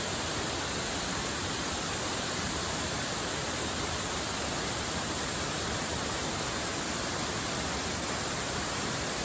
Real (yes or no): no